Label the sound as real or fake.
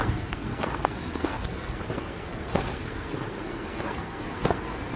fake